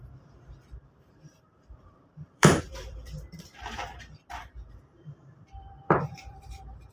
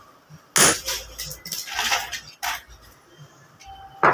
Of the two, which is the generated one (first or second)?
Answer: first